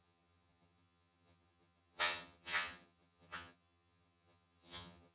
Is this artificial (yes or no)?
yes